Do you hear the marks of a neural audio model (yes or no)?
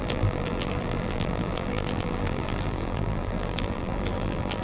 yes